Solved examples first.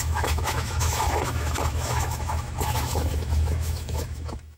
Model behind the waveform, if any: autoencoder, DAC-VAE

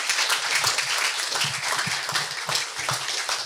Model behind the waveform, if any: none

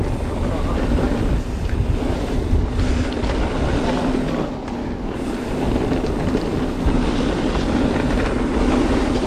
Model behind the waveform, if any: none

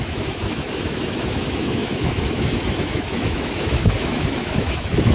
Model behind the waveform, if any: autoencoder, DAC-VAE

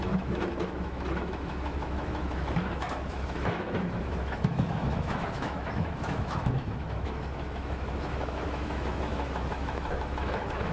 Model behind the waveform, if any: autoencoder, DAC-VAE